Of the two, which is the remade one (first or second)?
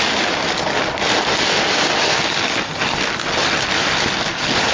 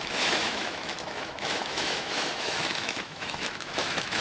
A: second